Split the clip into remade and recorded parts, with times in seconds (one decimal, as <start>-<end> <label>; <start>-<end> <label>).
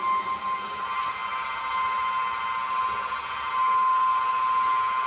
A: 0.0-5.1 recorded